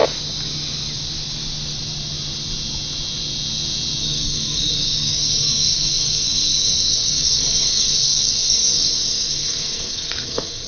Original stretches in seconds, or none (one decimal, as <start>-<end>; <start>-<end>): 0.0-4.0